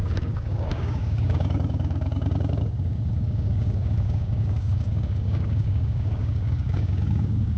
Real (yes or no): no